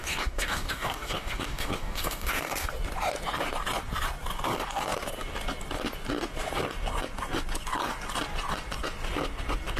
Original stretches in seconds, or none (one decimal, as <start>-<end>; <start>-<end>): 2.7-9.8